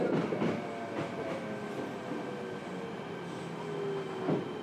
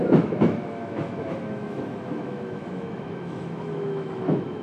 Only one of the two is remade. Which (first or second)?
second